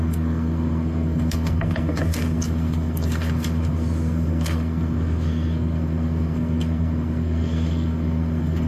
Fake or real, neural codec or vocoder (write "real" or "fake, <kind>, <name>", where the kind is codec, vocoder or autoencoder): fake, codec, SNAC